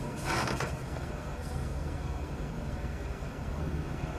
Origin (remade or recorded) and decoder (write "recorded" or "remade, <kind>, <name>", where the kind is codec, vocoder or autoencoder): remade, codec, SNAC